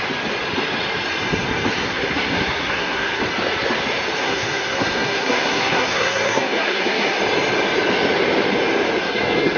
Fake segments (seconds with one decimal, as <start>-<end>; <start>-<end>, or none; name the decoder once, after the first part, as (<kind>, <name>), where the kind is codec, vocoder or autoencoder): 1.8-3.2 (codec, SNAC); 4.2-7.2; 9.0-9.6